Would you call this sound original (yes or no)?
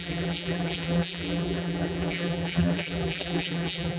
no